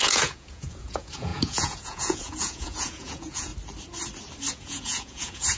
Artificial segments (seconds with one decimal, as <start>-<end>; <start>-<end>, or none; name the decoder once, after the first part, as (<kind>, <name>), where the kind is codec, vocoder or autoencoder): 0.0-3.5 (vocoder, Vocos); 4.5-5.6